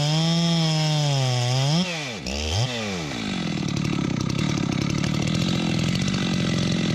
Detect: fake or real real